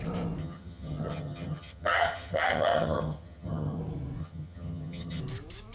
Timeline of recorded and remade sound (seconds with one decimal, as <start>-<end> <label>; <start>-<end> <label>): 0.0-0.4 recorded; 0.4-3.8 remade; 3.8-4.2 recorded; 4.2-5.2 remade; 5.2-5.7 recorded